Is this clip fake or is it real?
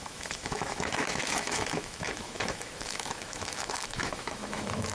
fake